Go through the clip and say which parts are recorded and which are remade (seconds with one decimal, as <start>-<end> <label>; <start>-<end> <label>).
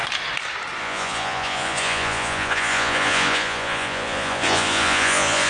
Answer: 0.0-0.8 recorded; 0.8-5.5 remade